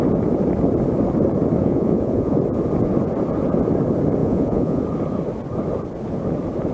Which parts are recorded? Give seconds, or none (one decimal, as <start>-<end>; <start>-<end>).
0.0-1.6; 2.4-4.2; 4.8-6.7